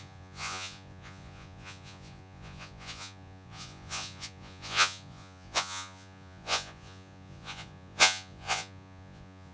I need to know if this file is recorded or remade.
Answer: remade